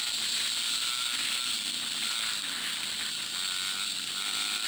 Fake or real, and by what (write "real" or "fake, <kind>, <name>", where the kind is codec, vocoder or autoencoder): real